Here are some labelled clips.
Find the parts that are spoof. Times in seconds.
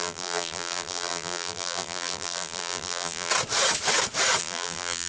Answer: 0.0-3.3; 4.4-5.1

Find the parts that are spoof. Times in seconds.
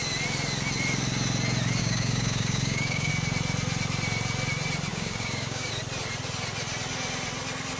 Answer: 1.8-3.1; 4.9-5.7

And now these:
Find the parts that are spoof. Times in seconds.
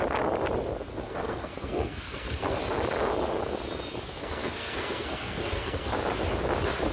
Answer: 0.9-2.6; 4.2-5.9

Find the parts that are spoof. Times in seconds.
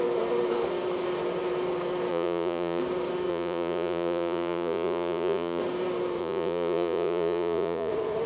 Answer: 2.1-2.8; 3.3-5.6; 6.2-7.9